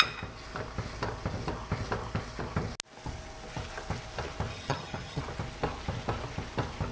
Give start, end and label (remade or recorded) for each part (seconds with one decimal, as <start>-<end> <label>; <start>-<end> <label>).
0.0-4.5 recorded; 4.5-5.2 remade; 5.2-6.9 recorded